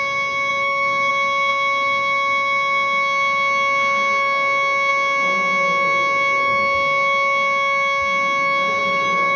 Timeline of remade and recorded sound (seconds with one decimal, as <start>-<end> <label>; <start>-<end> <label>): 0.0-0.5 recorded; 0.5-1.1 remade; 1.1-8.8 recorded; 8.8-9.4 remade